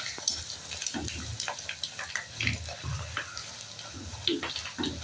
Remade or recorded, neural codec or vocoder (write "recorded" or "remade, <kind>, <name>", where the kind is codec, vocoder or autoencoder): recorded